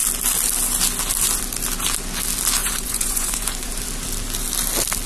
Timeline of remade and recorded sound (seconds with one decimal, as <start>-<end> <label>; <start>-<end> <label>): 0.0-2.6 recorded; 2.6-3.7 remade; 3.7-5.1 recorded